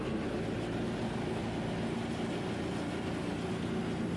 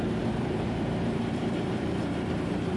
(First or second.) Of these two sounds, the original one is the first